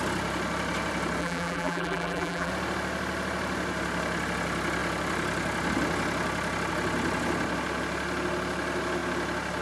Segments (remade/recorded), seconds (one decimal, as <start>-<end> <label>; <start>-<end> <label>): 0.0-1.2 recorded; 1.2-2.5 remade; 2.5-9.6 recorded